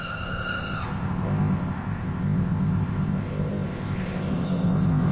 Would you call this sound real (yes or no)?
no